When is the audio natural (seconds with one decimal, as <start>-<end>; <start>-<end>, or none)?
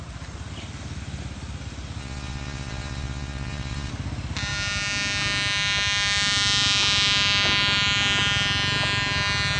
0.0-2.0; 3.9-9.6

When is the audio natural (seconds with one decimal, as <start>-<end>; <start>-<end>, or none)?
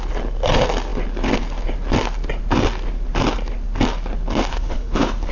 0.0-4.5